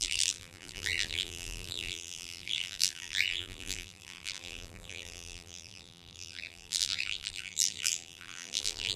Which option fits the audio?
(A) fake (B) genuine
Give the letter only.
A